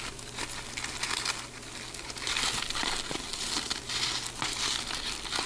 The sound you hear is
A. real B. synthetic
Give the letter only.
A